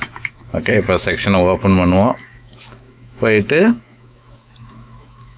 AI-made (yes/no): yes